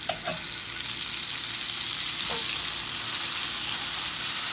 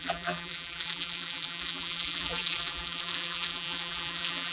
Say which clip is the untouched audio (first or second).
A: first